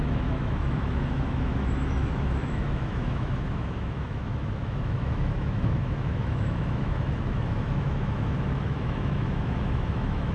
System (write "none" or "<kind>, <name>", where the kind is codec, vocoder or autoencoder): autoencoder, DAC-VAE